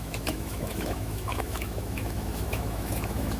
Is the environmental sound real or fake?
fake